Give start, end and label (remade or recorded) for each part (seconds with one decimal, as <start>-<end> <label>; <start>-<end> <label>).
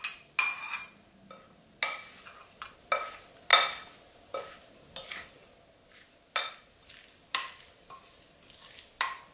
0.0-9.3 recorded